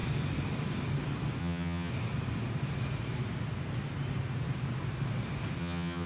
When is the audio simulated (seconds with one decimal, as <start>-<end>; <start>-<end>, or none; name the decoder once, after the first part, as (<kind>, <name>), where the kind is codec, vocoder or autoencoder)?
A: 1.4-1.9 (vocoder, HiFi-GAN); 5.6-6.1